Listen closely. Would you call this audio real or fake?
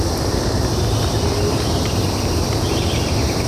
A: fake